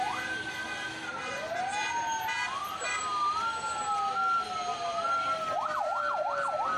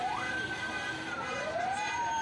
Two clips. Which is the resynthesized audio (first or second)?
second